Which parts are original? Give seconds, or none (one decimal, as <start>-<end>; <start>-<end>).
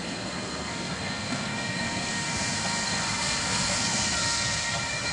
none